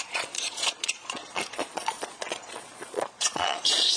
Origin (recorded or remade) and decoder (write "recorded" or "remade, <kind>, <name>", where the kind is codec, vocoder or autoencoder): remade, vocoder, Vocos